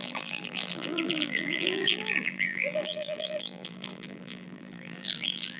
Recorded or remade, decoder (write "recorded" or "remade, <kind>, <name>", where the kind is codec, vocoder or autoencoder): remade, vocoder, BigVGAN v2